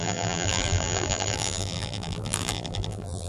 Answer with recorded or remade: remade